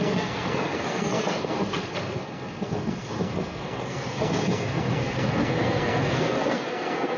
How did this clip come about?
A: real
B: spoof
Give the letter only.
B